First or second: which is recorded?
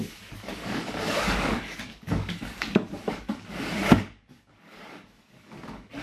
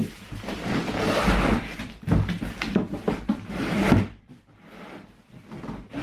second